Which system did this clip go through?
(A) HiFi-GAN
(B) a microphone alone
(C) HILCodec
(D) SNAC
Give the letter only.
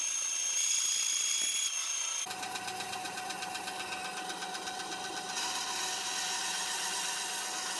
B